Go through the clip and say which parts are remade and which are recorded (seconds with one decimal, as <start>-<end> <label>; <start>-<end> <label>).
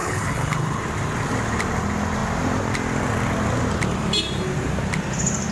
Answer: 0.0-0.8 remade; 0.8-5.5 recorded